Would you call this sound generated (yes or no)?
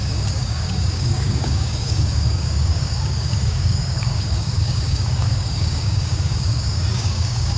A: yes